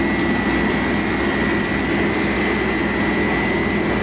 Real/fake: real